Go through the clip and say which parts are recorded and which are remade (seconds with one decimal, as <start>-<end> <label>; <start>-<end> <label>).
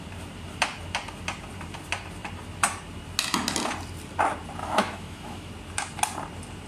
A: 0.0-4.6 recorded; 4.6-5.5 remade; 5.5-6.7 recorded